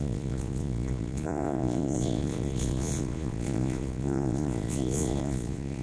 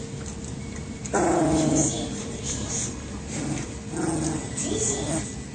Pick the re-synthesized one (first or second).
first